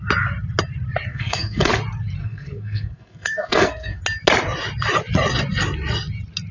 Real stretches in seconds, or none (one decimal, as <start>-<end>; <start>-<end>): 0.0-1.1; 1.7-2.2; 4.0-6.5